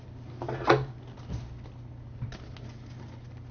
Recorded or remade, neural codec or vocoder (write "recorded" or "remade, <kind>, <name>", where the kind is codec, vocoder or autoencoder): recorded